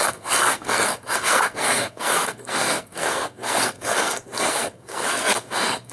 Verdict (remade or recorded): remade